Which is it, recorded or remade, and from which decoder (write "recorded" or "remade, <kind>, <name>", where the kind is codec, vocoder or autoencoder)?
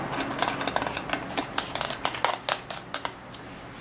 recorded